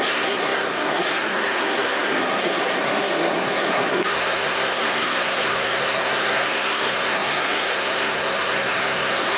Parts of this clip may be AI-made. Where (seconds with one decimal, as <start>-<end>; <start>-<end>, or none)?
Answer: 0.0-9.4